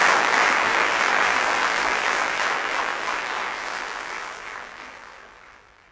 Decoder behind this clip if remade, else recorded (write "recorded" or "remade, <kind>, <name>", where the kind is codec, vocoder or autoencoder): remade, vocoder, BigVGAN v2